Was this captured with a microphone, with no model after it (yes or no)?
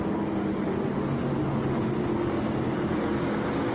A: yes